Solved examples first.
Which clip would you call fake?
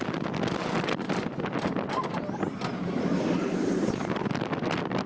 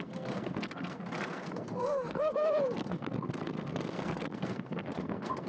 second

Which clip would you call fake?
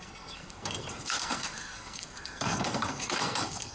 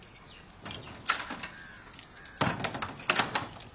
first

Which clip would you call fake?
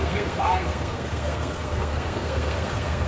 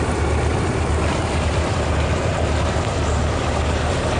first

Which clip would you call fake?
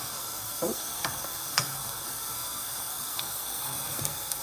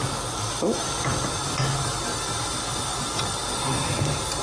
first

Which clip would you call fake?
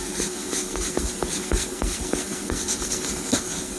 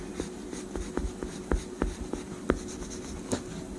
first